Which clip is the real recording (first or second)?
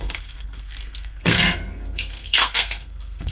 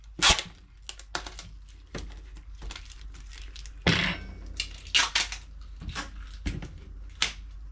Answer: second